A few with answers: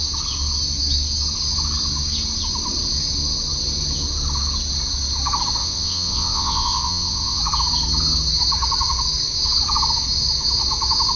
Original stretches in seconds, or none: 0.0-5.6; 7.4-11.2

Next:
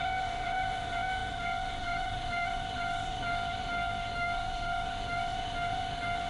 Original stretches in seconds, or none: none